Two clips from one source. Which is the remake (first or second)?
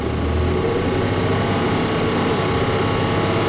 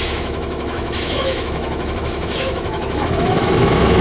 second